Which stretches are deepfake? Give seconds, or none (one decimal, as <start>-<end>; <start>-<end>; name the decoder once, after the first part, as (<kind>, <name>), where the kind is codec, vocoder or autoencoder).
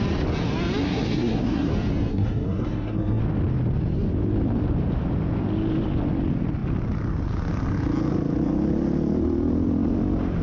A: 0.8-1.7 (codec, SNAC); 2.1-3.2